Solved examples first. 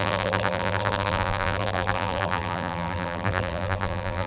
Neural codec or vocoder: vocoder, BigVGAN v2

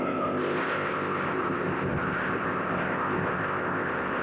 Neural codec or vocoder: codec, ZipCodec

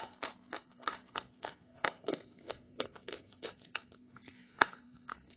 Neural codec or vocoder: codec, SNAC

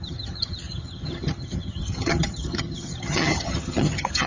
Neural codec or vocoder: vocoder, HiFi-GAN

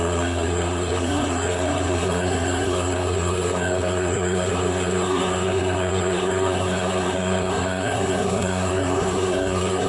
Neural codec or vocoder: codec, SNAC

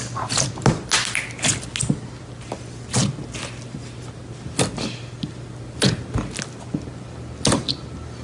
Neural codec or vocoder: none